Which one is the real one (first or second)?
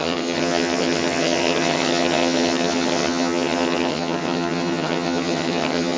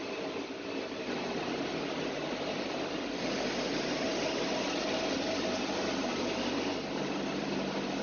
second